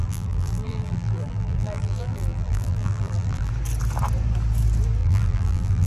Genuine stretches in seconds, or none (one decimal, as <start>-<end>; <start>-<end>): 3.5-5.0